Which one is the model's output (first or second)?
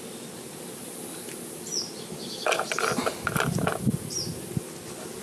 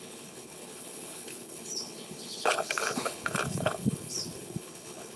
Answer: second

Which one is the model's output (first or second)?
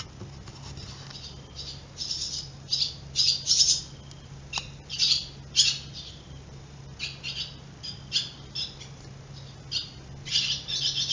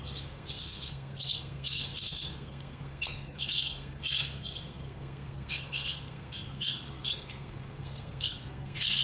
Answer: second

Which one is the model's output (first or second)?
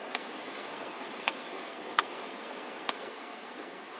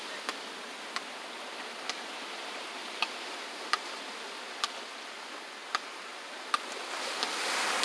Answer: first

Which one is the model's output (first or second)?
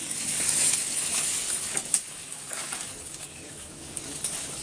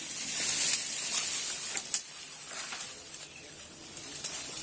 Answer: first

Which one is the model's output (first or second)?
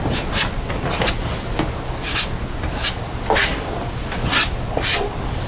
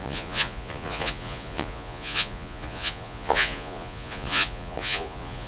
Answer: second